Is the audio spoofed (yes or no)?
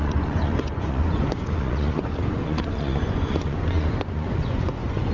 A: yes